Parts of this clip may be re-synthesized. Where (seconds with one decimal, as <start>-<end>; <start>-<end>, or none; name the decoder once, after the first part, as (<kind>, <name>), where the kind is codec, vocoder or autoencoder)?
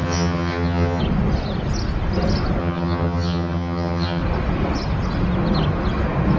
0.0-1.0 (vocoder, HiFi-GAN); 2.6-4.2